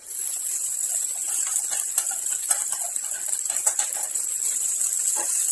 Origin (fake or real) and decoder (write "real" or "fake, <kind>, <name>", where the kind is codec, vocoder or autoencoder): real